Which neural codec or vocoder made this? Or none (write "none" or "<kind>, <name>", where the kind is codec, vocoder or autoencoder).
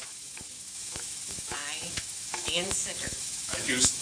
autoencoder, DAC-VAE